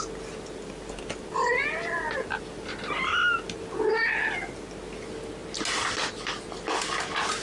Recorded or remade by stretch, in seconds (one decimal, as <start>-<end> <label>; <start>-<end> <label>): 0.0-7.4 recorded